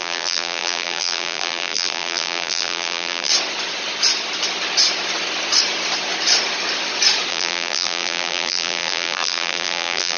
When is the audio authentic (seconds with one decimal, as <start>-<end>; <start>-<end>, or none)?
3.3-7.3